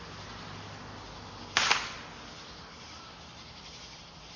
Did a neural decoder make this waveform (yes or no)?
no